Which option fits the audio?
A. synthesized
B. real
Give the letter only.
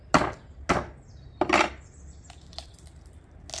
B